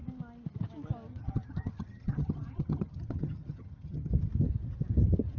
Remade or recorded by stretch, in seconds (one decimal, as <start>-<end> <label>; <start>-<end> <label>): 0.0-1.1 recorded; 1.1-4.1 remade; 4.1-5.4 recorded